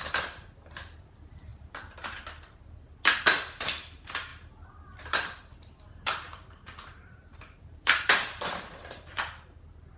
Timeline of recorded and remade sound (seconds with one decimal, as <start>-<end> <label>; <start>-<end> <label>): 0.0-1.5 recorded; 1.5-2.6 remade; 2.6-4.3 recorded; 4.3-9.6 remade; 9.6-10.0 recorded